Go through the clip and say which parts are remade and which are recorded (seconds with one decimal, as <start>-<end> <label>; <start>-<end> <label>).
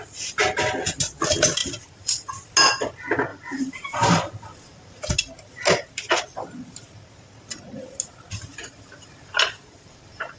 0.0-1.6 recorded; 1.6-2.3 remade; 2.3-3.3 recorded; 3.3-5.1 remade; 5.1-8.5 recorded; 8.5-10.4 remade